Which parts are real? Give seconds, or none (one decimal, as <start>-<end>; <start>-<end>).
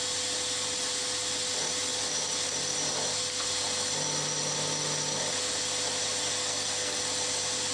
0.0-6.4; 7.0-7.7